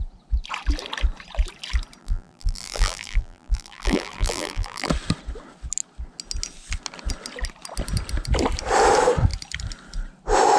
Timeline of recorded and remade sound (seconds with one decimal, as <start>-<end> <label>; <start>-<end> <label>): 0.0-2.0 recorded; 2.0-4.9 remade; 4.9-10.6 recorded